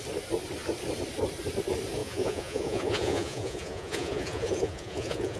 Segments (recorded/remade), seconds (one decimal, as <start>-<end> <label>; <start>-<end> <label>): 0.0-2.0 recorded; 2.0-5.4 remade